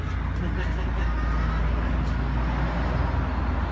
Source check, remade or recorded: recorded